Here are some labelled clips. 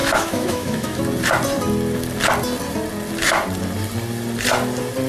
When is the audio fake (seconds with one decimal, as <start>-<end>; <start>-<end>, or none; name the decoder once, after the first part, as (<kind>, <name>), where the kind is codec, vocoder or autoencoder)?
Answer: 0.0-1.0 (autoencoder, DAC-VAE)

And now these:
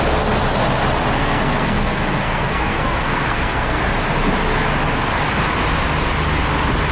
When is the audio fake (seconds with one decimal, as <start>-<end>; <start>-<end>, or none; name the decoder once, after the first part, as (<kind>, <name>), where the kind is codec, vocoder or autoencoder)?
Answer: 1.2-3.8 (codec, SNAC)

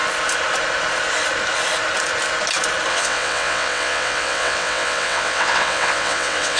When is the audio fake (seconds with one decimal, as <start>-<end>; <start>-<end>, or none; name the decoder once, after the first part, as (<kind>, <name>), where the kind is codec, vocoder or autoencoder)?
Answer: 2.9-6.6 (vocoder, WaveNeXt)